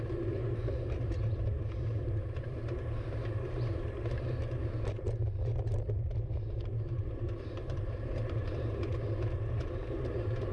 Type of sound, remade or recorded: remade